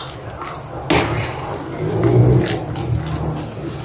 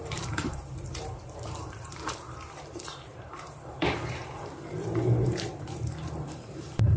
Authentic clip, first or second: first